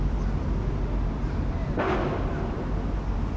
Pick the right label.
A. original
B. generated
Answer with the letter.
A